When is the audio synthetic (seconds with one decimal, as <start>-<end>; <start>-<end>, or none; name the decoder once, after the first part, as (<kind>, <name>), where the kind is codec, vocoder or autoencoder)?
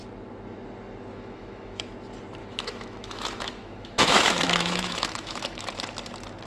1.1-1.9 (autoencoder, DAC-VAE); 2.4-5.7